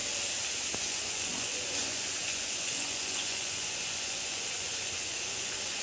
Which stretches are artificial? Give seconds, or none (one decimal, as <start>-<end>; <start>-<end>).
0.8-5.8